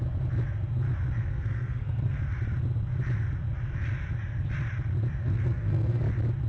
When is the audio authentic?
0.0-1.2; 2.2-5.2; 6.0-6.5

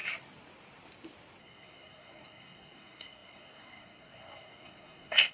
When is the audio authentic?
0.0-1.4

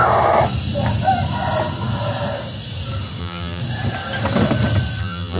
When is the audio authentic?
0.0-3.2; 3.6-5.0